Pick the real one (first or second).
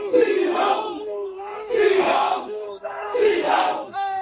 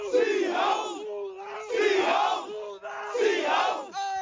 second